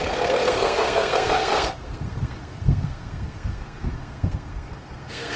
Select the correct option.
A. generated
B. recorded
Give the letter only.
A